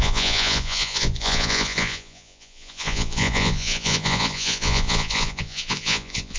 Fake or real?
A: fake